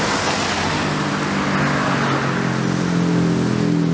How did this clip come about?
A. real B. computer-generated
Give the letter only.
A